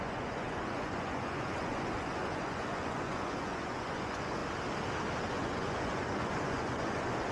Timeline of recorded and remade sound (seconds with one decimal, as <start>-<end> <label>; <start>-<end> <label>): 0.0-4.4 remade; 4.4-5.3 recorded; 5.3-7.3 remade